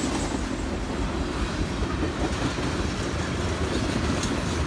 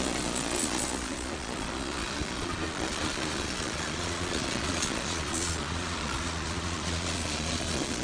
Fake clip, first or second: second